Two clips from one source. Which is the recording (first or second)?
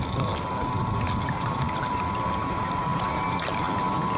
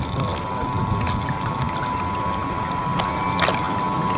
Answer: second